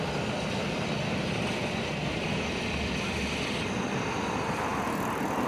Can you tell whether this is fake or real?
real